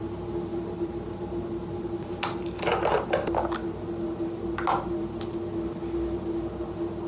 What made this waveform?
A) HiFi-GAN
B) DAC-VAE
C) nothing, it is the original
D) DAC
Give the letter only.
C